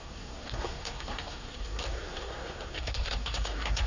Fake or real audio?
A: fake